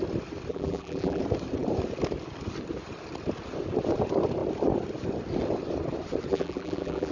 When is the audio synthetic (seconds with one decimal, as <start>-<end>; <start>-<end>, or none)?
0.5-1.2; 6.3-7.1